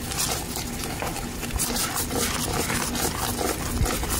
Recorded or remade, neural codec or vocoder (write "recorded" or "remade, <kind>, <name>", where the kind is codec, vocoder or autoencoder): recorded